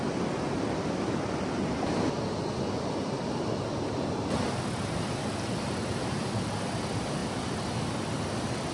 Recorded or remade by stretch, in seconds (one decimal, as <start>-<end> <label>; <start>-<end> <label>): 0.0-8.7 recorded